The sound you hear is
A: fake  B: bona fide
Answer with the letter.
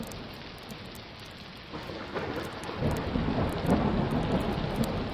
B